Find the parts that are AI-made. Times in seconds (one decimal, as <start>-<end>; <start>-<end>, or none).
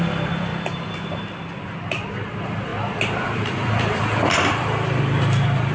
0.0-0.5; 1.9-5.7